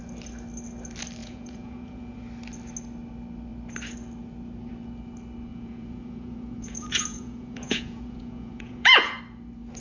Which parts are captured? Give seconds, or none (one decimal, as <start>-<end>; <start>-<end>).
0.0-1.2; 2.2-5.5; 9.2-9.8